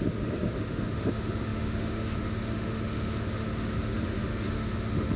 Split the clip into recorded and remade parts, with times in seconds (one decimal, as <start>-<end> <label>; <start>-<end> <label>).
0.0-5.2 remade